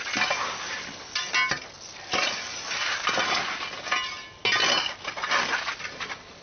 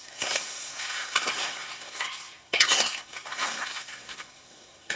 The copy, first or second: second